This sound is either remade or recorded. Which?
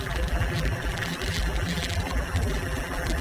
remade